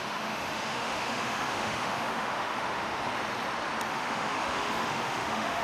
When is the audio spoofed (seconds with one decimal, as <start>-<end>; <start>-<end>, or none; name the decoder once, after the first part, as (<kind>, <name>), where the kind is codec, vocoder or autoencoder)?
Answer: 0.0-3.0 (autoencoder, DAC-VAE); 3.9-5.6